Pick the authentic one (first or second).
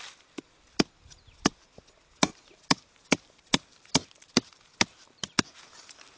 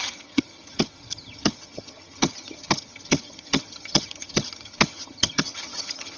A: first